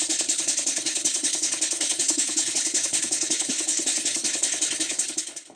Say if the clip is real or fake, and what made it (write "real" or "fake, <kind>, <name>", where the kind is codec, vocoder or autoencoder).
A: fake, codec, HILCodec